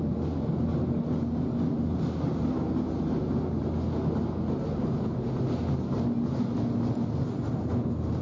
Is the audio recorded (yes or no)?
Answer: yes